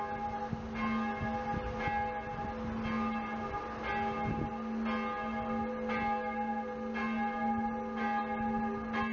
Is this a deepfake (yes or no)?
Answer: no